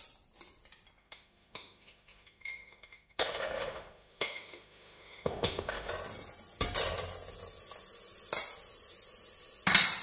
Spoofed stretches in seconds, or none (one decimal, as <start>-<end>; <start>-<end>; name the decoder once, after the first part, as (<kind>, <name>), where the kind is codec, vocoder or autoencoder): 1.0-5.9 (autoencoder, DAC-VAE)